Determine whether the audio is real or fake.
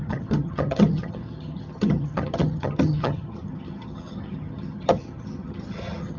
fake